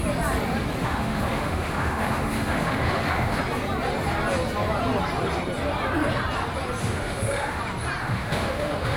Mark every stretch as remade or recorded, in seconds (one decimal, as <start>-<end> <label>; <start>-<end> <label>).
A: 0.0-0.8 recorded; 0.8-3.4 remade; 3.4-6.8 recorded; 6.8-7.6 remade; 7.6-8.0 recorded; 8.0-9.0 remade